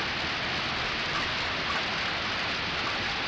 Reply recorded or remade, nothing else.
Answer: recorded